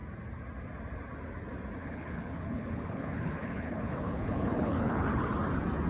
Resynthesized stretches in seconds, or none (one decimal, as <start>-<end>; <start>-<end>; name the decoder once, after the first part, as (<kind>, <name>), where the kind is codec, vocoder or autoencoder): 1.8-5.3 (codec, HILCodec)